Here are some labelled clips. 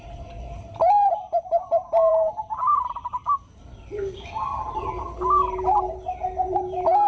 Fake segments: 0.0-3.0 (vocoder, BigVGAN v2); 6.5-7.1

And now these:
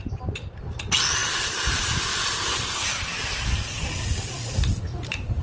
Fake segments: none

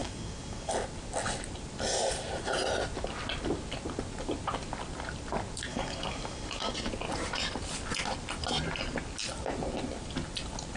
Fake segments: 0.0-0.7 (codec, DAC); 5.7-6.7

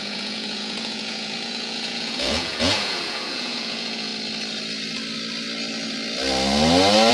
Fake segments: 0.0-4.1 (vocoder, Vocos)

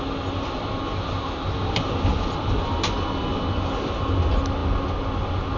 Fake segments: none